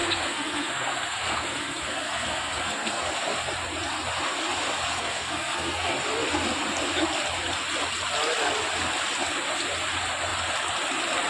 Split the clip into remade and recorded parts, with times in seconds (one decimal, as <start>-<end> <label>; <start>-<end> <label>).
0.0-3.1 remade; 3.1-4.9 recorded; 4.9-5.9 remade; 5.9-11.3 recorded